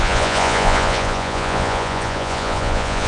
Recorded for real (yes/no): no